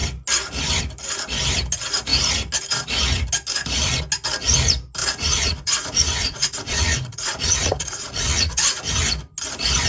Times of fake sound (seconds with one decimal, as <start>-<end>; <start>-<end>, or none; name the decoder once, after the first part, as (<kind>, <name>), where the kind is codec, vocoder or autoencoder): 5.0-8.8 (vocoder, Vocos)